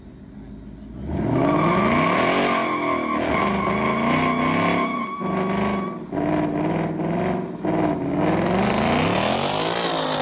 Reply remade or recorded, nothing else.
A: recorded